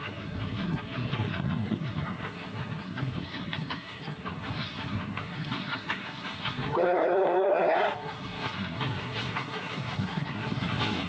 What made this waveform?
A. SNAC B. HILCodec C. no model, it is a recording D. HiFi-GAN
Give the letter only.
A